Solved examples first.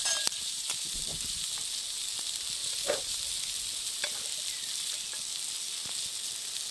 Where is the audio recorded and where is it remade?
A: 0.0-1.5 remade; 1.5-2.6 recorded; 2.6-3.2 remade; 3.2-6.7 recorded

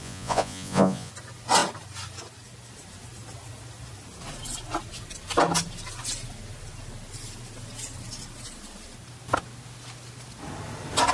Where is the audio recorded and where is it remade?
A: 0.0-1.1 remade; 1.1-11.1 recorded